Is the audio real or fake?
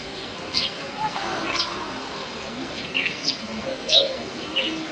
fake